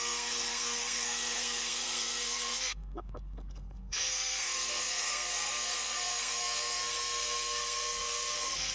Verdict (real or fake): fake